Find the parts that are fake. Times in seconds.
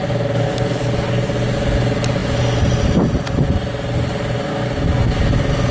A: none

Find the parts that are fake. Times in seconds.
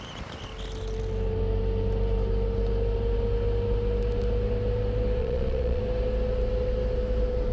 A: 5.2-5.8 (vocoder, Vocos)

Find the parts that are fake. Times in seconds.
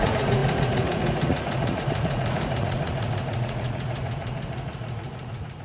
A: 0.0-5.6 (vocoder, Vocos)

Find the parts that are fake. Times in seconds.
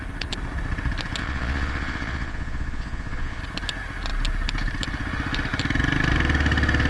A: 1.2-3.4 (vocoder, Vocos)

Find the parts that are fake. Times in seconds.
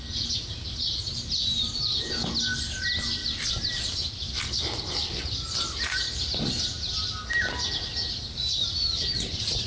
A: none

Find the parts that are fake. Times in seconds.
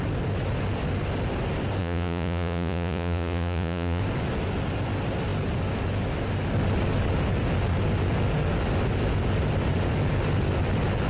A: 1.8-4.0 (vocoder, Vocos)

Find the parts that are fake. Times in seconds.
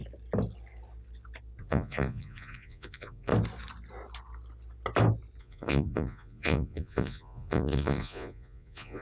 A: 1.6-3.3 (vocoder, Vocos); 5.4-9.0